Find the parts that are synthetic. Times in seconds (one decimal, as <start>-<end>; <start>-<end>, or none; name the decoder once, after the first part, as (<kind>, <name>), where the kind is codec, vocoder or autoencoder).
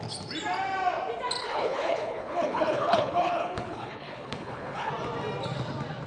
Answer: 1.4-4.9 (codec, HILCodec)